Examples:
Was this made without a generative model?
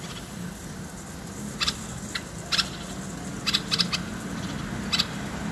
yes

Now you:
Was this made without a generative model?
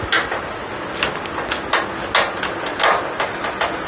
yes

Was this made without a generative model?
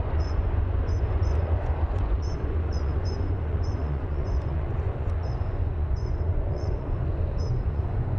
no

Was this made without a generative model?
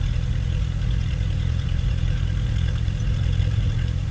no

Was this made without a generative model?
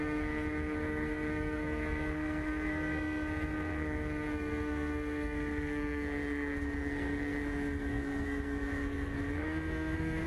no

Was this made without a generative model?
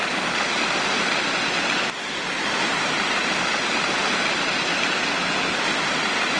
yes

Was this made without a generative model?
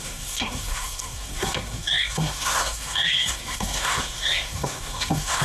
no